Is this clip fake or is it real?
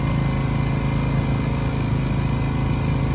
real